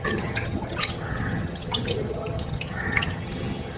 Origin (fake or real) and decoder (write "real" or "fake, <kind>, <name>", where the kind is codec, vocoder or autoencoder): fake, vocoder, HiFi-GAN